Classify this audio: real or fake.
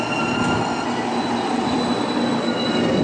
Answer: real